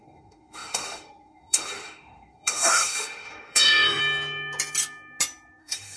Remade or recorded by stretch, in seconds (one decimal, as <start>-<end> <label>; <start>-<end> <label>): 0.0-4.0 remade; 4.0-5.6 recorded; 5.6-6.0 remade